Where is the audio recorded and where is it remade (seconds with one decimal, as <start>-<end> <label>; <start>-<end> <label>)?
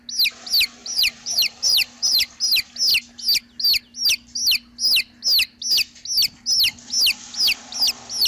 0.0-0.8 recorded; 0.8-2.3 remade; 2.3-8.3 recorded